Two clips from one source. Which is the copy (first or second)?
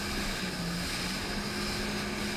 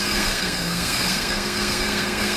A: second